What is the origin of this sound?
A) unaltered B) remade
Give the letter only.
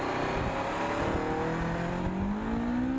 A